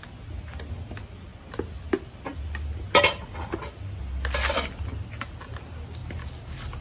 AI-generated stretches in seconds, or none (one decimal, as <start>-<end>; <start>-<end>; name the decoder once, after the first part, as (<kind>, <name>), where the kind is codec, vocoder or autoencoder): 6.0-6.8 (vocoder, BigVGAN v2)